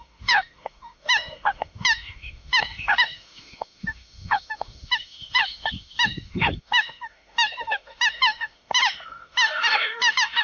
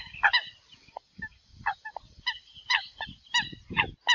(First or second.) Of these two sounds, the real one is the second